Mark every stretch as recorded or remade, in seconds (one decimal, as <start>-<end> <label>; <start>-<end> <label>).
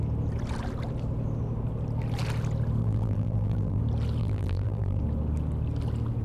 0.0-2.8 recorded; 2.8-3.8 remade; 3.8-4.2 recorded; 4.2-5.0 remade; 5.0-6.2 recorded